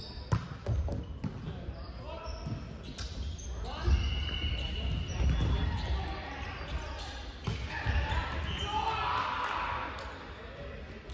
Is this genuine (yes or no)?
yes